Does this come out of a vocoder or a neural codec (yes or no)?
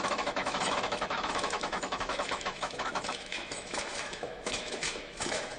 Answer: yes